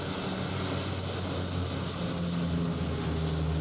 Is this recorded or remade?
recorded